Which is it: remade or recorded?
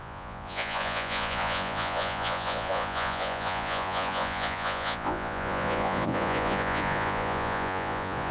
remade